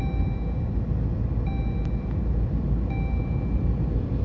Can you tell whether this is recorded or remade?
recorded